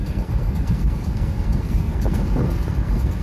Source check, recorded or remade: remade